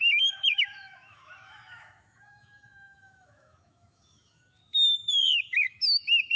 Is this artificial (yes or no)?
yes